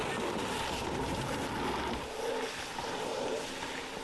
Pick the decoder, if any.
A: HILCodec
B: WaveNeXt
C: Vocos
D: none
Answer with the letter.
D